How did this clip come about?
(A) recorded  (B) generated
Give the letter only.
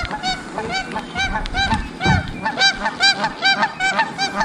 A